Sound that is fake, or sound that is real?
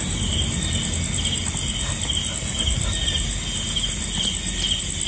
real